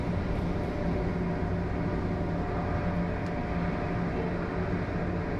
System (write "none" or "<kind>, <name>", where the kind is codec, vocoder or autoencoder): none